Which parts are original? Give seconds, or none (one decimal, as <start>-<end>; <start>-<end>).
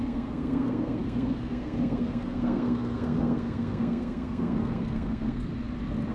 5.5-6.1